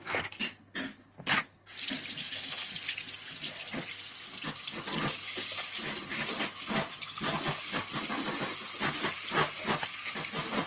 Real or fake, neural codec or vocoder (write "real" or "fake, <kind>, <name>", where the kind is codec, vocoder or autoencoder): real